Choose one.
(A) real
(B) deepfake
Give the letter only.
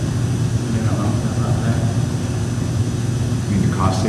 A